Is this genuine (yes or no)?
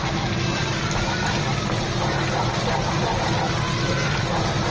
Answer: yes